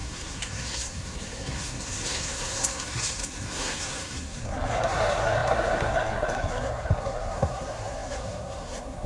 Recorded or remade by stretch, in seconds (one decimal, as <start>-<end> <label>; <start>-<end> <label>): 0.0-9.1 remade